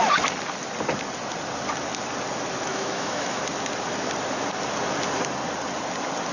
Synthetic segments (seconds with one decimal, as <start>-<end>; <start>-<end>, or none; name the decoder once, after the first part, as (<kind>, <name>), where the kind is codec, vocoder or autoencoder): 2.7-3.4 (autoencoder, DAC-VAE)